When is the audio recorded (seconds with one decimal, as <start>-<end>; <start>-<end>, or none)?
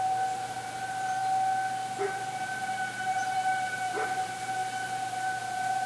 1.2-2.0